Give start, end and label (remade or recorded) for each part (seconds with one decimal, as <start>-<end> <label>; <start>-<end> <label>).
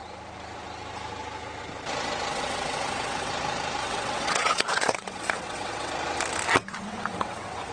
0.0-2.3 recorded; 2.3-3.3 remade; 3.3-3.8 recorded; 3.8-5.9 remade; 5.9-6.6 recorded; 6.6-7.7 remade